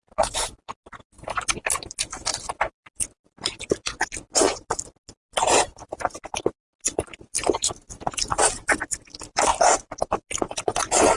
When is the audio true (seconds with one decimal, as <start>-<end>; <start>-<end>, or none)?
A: 0.0-11.2